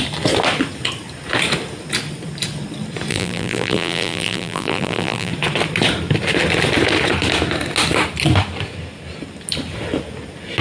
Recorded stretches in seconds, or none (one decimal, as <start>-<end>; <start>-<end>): 0.0-3.1; 5.3-10.6